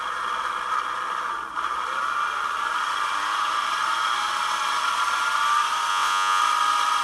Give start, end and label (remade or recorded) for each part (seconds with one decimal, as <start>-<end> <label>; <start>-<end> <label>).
0.0-5.9 recorded; 5.9-6.4 remade; 6.4-7.0 recorded